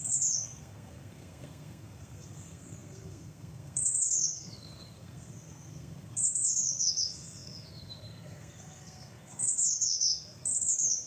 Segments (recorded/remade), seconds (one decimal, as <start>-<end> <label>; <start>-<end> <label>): 0.0-11.1 remade